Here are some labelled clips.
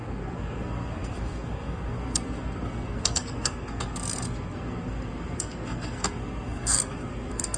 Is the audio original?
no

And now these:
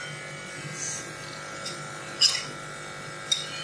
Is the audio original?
yes